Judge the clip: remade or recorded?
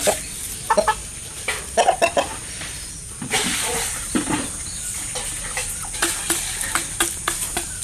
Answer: recorded